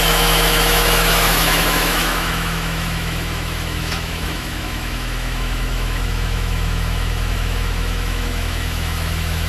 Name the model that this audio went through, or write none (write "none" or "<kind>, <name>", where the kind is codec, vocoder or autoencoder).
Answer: autoencoder, DAC-VAE